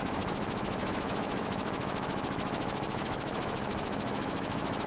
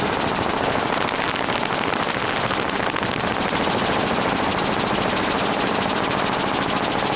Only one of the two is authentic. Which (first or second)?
second